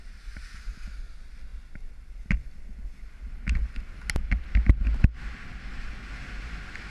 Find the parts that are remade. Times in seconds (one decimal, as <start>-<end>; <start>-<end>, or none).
none